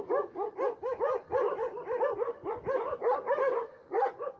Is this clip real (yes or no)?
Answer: yes